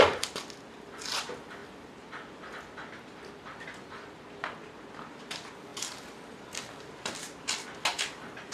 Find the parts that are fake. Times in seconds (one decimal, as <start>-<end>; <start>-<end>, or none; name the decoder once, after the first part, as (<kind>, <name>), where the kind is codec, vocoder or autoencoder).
none